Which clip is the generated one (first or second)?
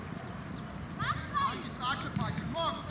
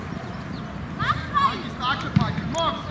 first